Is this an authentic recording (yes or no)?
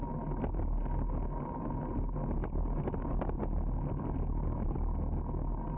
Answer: yes